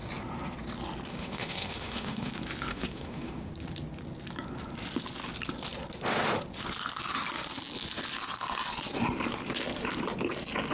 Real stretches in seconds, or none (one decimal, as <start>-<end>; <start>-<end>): 0.0-1.1; 2.3-2.7; 3.5-10.7